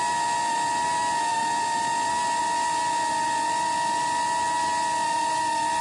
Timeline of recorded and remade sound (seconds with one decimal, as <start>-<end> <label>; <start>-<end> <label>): 0.0-5.8 recorded